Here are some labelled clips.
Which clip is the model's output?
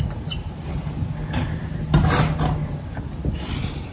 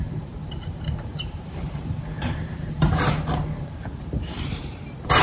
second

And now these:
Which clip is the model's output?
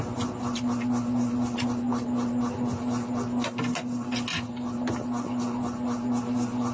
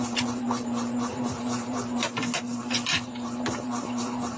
second